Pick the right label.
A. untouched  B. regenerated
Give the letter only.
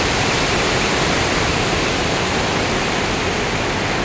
A